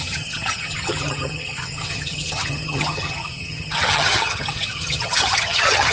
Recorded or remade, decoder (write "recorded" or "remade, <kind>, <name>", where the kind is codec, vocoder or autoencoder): remade, vocoder, HiFi-GAN